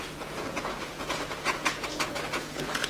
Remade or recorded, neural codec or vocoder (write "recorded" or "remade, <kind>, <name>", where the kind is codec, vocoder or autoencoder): remade, vocoder, Vocos